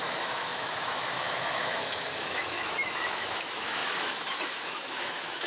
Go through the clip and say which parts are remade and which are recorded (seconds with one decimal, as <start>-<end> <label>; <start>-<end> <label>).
0.0-5.5 remade